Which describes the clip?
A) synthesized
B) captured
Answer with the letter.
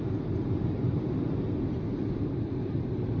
B